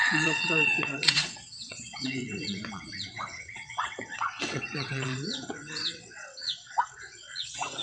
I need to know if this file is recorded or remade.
remade